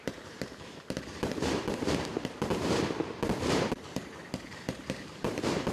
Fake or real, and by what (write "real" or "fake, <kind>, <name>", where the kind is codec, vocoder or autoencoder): fake, vocoder, BigVGAN v2